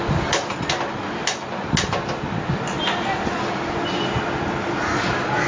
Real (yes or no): yes